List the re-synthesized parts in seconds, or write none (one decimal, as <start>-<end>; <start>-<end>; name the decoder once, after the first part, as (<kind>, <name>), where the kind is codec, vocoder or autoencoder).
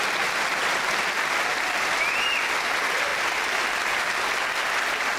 none